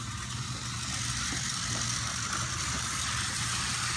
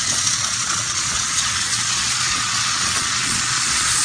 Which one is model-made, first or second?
second